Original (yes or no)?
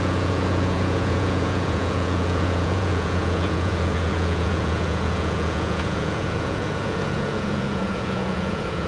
no